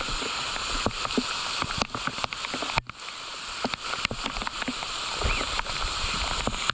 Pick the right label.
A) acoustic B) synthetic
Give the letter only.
A